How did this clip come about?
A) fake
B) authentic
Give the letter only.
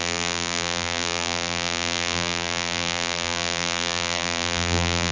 A